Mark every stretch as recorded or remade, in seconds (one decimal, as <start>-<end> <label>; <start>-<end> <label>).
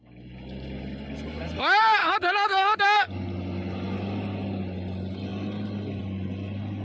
0.0-2.0 recorded; 2.0-2.8 remade; 2.8-6.8 recorded